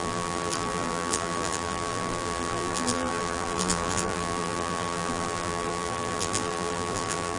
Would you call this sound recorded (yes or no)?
no